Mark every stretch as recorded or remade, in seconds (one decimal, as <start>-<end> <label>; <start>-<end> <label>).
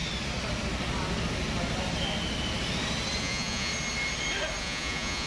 0.0-3.2 recorded; 3.2-3.7 remade; 3.7-4.6 recorded; 4.6-5.3 remade